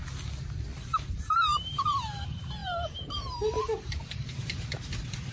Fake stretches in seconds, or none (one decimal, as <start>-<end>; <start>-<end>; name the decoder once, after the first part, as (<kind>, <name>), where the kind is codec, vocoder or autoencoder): 0.8-5.3 (vocoder, BigVGAN v2)